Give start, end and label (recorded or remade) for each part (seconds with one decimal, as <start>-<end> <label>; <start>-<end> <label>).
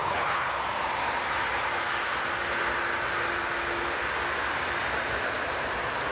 0.0-0.5 remade; 0.5-6.1 recorded